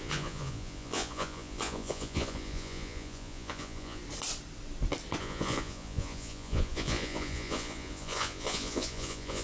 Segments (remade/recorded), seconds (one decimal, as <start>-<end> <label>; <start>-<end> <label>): 0.0-4.0 remade; 4.0-5.2 recorded; 5.2-9.4 remade